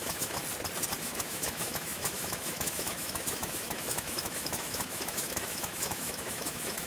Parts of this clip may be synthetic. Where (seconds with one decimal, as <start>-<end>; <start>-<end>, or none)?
0.0-0.4; 1.0-6.9